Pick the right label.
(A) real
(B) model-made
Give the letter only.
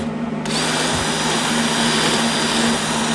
A